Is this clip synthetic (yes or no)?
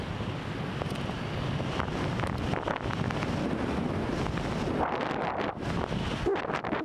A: no